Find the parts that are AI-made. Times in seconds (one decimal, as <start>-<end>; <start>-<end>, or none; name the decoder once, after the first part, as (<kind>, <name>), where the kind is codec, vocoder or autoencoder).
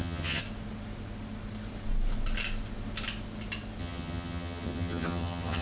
0.0-0.4 (vocoder, HiFi-GAN); 3.8-5.6